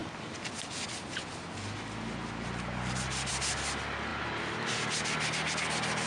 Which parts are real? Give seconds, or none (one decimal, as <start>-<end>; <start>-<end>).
0.0-6.1